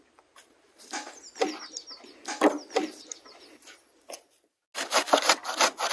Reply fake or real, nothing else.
real